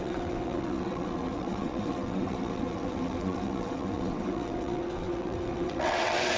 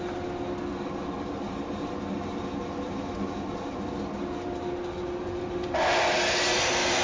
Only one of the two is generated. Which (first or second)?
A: first